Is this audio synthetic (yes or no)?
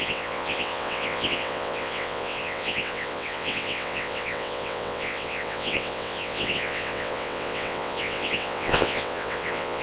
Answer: yes